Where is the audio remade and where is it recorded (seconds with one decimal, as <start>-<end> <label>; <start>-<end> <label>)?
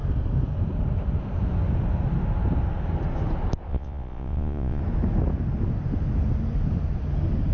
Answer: 0.0-3.7 recorded; 3.7-4.8 remade; 4.8-7.5 recorded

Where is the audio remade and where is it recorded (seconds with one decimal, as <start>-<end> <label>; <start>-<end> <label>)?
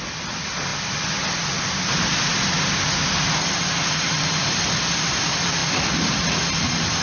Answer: 0.0-0.7 remade; 0.7-4.9 recorded; 4.9-7.0 remade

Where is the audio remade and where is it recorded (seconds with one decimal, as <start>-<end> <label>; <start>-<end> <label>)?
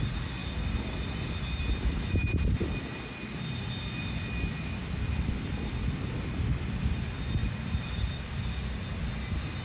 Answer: 0.0-7.4 recorded; 7.4-8.4 remade; 8.4-9.6 recorded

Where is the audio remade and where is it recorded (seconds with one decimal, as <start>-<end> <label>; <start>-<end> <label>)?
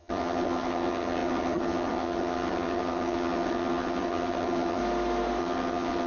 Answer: 0.0-4.8 remade; 4.8-5.4 recorded; 5.4-6.1 remade